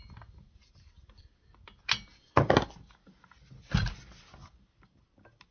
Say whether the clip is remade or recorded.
recorded